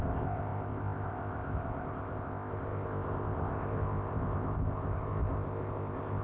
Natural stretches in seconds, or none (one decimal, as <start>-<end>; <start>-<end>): none